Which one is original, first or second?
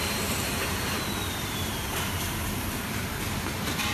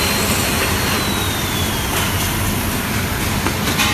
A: second